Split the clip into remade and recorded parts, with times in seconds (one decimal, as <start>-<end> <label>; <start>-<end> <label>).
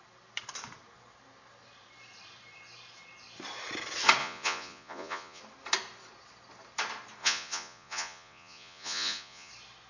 0.0-4.2 recorded; 4.2-5.4 remade; 5.4-7.2 recorded; 7.2-9.5 remade; 9.5-9.9 recorded